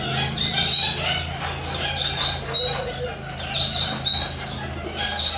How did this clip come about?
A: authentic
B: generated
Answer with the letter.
A